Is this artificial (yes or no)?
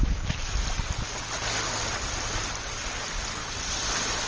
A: no